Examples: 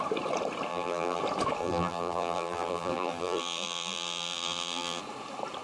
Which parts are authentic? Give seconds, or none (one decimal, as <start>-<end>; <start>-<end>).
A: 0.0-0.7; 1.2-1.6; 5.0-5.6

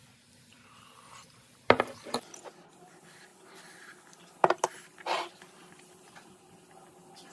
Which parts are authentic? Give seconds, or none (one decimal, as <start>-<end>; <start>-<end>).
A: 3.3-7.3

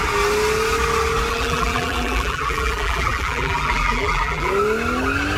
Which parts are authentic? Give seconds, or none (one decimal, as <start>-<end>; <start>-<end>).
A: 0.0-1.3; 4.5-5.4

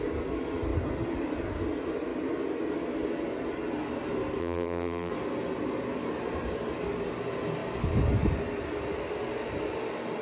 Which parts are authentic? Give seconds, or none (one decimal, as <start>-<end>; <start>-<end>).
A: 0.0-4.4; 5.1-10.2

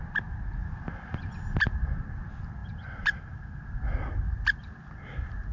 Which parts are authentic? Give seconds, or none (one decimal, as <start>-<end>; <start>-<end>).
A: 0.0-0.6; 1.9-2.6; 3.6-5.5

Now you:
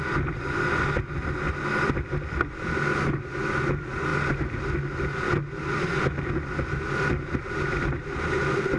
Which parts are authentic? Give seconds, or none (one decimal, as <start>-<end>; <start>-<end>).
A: 0.0-8.8